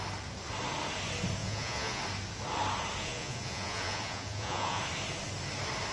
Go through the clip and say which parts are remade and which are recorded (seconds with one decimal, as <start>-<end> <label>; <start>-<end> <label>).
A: 0.0-1.4 recorded; 1.4-2.0 remade; 2.0-3.0 recorded; 3.0-4.8 remade; 4.8-5.9 recorded